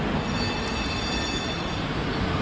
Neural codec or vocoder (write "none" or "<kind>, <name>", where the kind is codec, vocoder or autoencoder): none